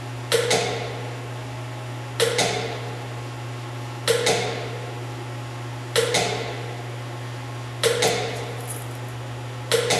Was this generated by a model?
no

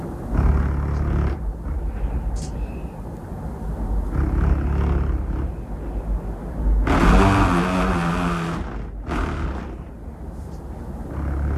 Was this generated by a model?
no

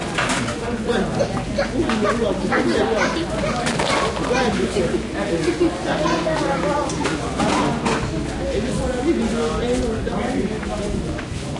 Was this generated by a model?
no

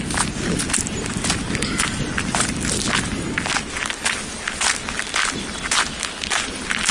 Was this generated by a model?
no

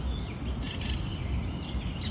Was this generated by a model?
no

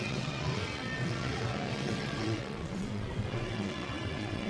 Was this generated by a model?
yes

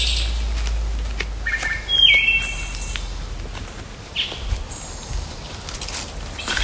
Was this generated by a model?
no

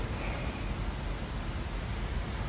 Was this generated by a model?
no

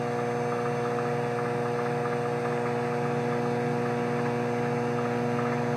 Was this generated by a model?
no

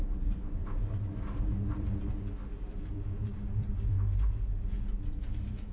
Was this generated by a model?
yes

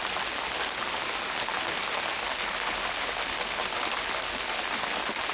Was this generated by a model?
no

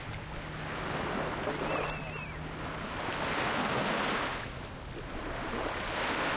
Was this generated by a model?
no